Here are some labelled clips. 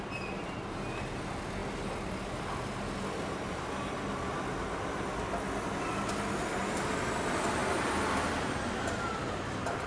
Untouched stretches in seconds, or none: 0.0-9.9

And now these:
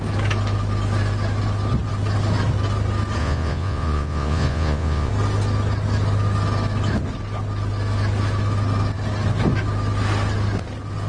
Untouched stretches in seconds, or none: 0.0-3.2; 5.1-11.1

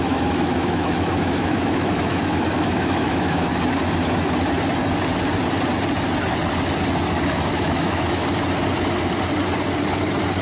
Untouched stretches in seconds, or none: 3.5-7.5; 8.2-10.4